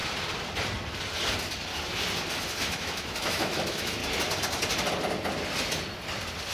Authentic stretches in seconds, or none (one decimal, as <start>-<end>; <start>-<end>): 0.0-2.6; 4.0-6.5